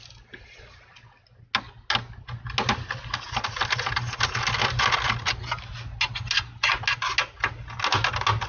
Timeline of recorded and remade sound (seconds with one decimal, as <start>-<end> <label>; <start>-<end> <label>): 0.0-8.5 recorded

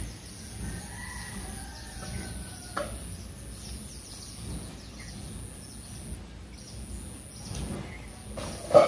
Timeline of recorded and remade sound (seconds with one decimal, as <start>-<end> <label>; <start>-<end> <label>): 0.0-1.7 recorded; 1.7-2.6 remade; 2.6-8.9 recorded

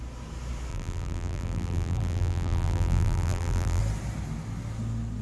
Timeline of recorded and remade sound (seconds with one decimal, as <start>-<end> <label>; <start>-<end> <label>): 0.0-0.7 recorded; 0.7-3.8 remade; 3.8-5.2 recorded

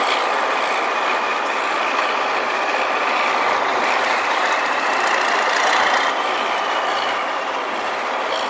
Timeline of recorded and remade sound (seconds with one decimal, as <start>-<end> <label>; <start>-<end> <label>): 0.0-1.3 recorded; 1.3-5.7 remade; 5.7-8.5 recorded

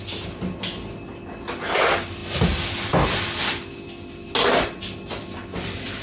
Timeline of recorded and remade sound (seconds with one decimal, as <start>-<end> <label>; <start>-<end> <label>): 0.0-6.0 recorded